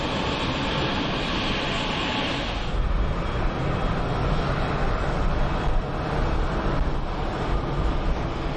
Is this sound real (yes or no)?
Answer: yes